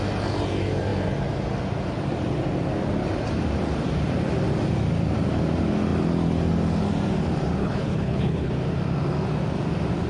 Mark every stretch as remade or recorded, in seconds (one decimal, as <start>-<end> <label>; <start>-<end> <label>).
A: 0.0-7.6 recorded; 7.6-8.5 remade; 8.5-10.1 recorded